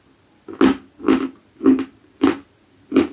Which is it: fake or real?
real